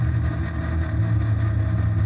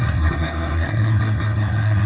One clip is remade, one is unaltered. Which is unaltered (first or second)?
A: first